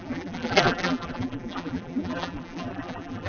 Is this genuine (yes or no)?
no